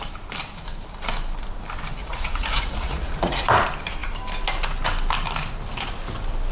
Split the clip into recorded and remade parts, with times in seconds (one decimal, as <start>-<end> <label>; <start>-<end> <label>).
0.0-2.0 recorded; 2.0-3.5 remade; 3.5-6.5 recorded